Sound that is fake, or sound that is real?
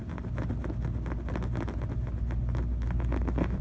real